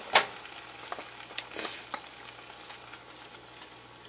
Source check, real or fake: real